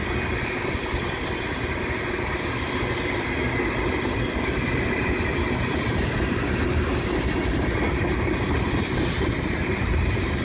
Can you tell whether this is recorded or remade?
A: recorded